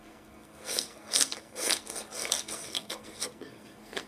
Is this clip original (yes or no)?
no